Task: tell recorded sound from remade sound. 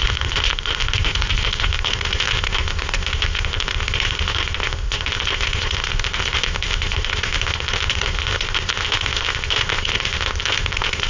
remade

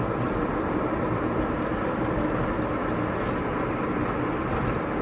recorded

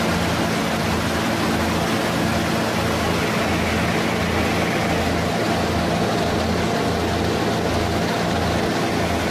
recorded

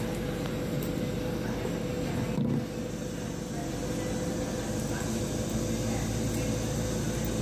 recorded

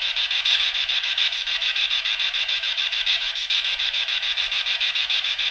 remade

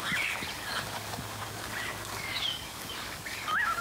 remade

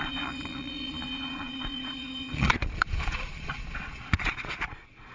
remade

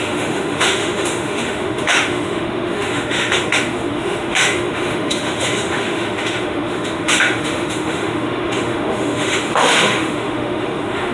remade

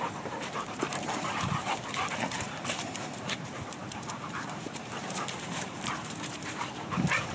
remade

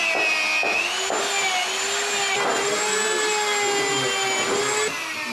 recorded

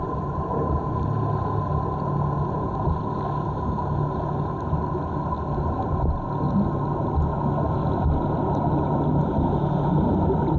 recorded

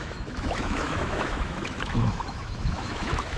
remade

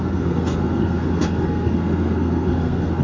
remade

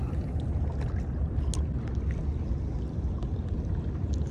recorded